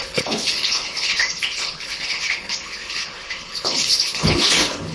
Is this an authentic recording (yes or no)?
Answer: no